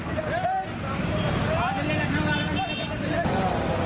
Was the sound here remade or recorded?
recorded